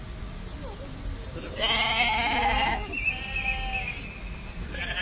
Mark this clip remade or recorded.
recorded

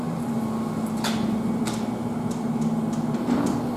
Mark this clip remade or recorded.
recorded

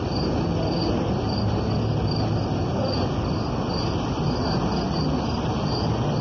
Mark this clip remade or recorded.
recorded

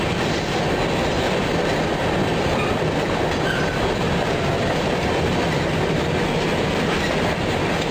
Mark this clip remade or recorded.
recorded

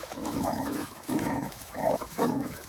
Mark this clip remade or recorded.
remade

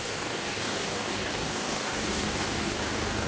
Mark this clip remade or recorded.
remade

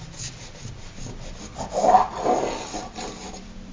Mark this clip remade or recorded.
recorded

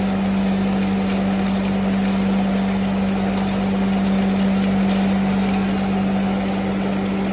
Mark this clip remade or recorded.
recorded